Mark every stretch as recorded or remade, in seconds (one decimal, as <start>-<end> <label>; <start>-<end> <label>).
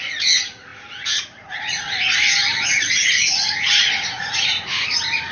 0.0-5.3 remade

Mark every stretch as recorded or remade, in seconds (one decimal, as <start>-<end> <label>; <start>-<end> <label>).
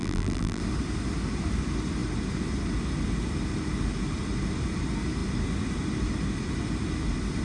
0.0-0.6 remade; 0.6-7.4 recorded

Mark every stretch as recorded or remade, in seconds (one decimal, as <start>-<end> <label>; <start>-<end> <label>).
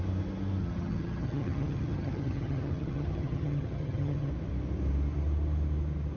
0.0-0.6 recorded; 0.6-4.3 remade; 4.3-6.2 recorded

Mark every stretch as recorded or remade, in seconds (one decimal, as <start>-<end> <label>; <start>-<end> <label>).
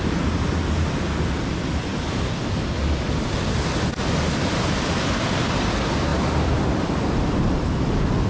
0.0-1.9 recorded; 1.9-2.8 remade; 2.8-6.1 recorded; 6.1-7.6 remade; 7.6-8.3 recorded